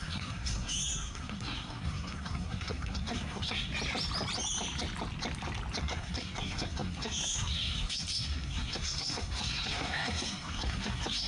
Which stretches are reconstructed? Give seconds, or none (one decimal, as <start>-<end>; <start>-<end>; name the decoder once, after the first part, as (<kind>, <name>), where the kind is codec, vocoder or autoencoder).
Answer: 0.0-3.7 (codec, SNAC); 5.8-11.3

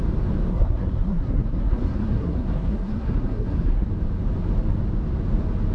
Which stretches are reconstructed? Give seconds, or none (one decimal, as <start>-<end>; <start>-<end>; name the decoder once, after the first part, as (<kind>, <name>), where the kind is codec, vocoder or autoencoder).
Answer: 0.5-3.9 (codec, SNAC)

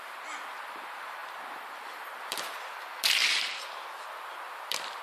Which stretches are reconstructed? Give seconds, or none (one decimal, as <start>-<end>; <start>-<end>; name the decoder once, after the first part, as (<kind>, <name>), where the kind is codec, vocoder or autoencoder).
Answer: none

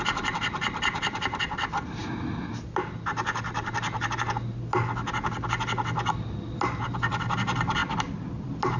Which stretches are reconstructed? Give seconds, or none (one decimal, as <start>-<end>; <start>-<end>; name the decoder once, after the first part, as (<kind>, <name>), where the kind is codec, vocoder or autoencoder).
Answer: none

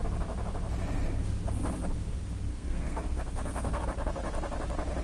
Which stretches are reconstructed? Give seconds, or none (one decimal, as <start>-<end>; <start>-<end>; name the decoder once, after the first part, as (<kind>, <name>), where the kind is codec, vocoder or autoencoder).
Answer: 2.5-3.8 (codec, SNAC)

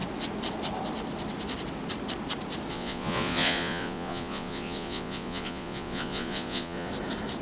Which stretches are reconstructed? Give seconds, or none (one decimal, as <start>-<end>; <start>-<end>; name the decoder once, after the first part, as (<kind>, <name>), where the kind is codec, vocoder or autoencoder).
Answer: 2.7-6.9 (vocoder, Vocos)

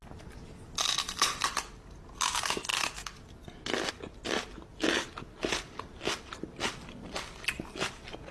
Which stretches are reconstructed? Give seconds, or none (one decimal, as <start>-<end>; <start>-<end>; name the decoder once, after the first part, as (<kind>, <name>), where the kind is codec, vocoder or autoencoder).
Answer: none